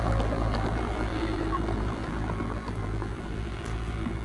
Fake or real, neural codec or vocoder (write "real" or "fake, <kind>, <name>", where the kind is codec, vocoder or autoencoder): fake, vocoder, BigVGAN v2